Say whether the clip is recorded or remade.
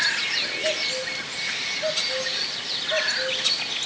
recorded